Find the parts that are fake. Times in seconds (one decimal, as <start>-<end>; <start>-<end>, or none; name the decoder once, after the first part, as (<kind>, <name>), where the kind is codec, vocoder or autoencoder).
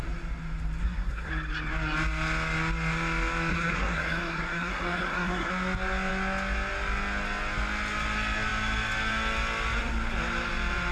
0.8-1.3 (codec, SNAC); 3.5-5.5